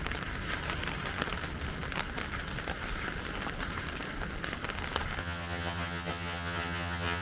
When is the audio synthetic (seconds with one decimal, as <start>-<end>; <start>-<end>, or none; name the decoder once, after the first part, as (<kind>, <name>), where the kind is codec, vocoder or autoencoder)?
5.2-7.2 (vocoder, HiFi-GAN)